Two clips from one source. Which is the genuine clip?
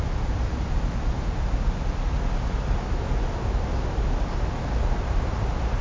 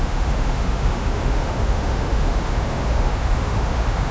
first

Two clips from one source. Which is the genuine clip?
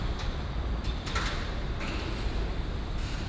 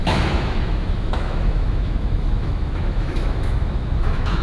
first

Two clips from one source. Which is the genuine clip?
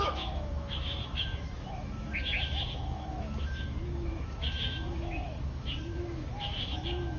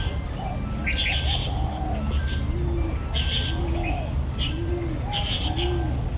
second